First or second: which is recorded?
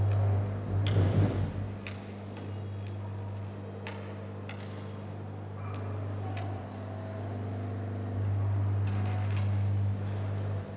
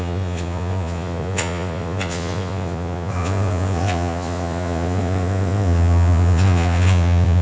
first